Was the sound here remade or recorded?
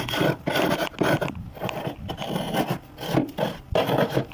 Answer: recorded